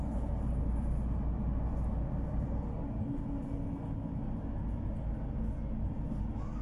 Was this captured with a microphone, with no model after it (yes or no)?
yes